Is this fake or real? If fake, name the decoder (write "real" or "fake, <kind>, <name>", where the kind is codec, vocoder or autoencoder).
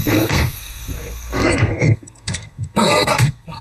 fake, codec, SNAC